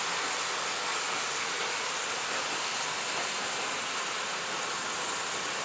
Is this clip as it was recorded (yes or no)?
yes